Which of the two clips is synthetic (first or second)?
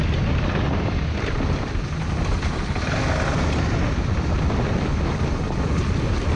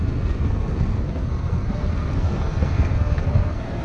second